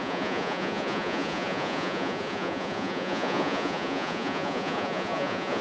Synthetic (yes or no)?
yes